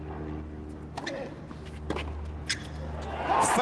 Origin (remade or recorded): recorded